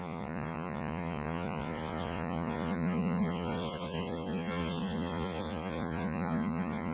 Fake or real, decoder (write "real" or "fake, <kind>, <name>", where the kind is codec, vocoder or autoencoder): fake, vocoder, Vocos